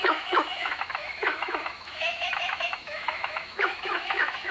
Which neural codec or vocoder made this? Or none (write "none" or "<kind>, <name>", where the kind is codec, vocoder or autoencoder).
autoencoder, DAC-VAE